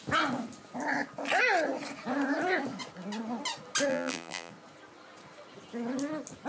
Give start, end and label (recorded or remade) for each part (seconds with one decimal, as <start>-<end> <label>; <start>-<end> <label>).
0.0-3.9 recorded; 3.9-4.5 remade; 4.5-6.5 recorded